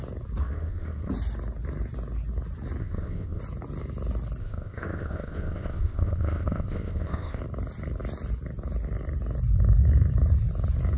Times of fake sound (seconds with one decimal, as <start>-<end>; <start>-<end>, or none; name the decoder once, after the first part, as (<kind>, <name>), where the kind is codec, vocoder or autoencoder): 0.4-1.1 (codec, ZipCodec); 2.8-3.4; 4.4-7.4